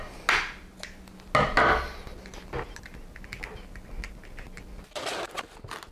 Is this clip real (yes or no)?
yes